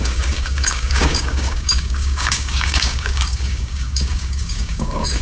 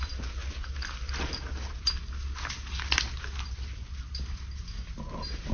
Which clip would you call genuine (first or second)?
second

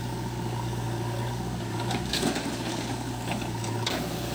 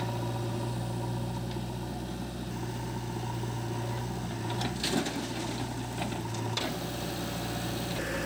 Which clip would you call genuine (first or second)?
second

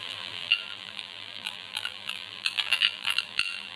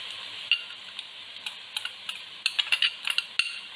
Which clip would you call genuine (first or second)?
second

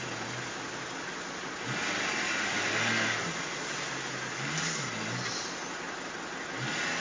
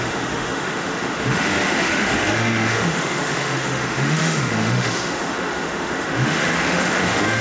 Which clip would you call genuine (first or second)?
first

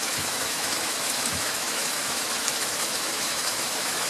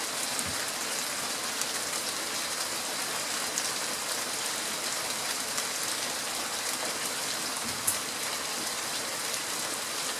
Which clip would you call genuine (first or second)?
second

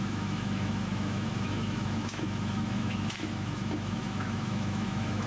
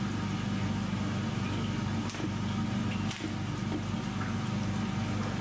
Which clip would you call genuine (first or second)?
second